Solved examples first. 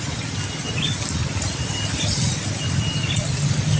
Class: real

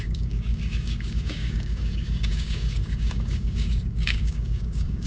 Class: fake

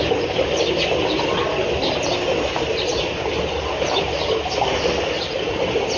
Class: real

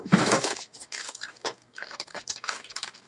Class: fake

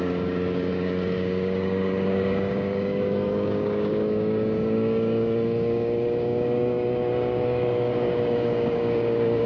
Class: fake